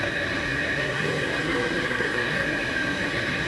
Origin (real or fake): fake